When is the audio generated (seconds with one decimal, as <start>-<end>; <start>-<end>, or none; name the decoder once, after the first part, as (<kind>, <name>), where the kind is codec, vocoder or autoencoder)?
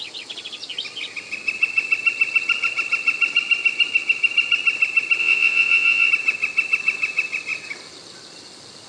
5.2-6.1 (vocoder, WaveNeXt)